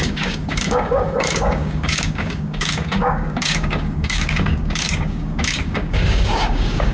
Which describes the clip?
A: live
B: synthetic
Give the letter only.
B